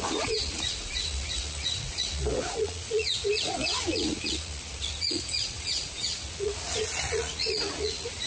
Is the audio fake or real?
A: fake